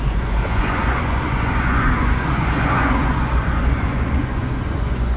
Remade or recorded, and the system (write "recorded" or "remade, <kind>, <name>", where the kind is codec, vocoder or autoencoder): remade, vocoder, Vocos